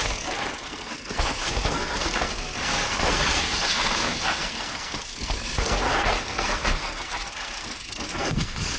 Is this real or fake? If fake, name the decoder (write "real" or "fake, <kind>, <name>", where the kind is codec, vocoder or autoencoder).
fake, codec, SNAC